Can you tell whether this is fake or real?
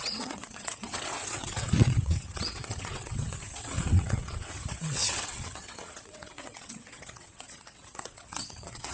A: fake